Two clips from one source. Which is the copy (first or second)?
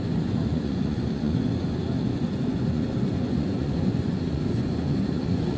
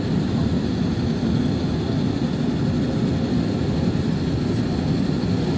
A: first